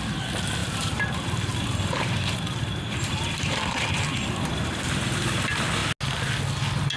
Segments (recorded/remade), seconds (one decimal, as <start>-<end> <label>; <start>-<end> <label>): 0.0-0.6 recorded; 0.6-4.8 remade; 4.8-7.0 recorded